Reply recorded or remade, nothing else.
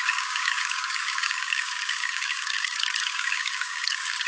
remade